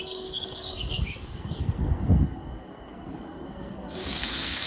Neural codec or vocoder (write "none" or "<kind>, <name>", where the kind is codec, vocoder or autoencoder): codec, SNAC